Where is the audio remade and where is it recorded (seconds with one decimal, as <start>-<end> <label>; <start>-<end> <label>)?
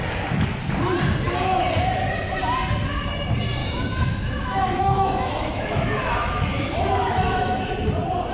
0.0-3.6 recorded; 3.6-7.7 remade; 7.7-8.3 recorded